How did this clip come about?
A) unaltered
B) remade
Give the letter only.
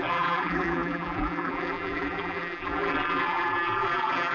B